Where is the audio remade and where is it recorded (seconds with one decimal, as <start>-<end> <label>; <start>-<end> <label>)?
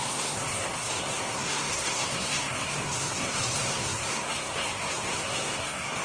0.0-6.0 remade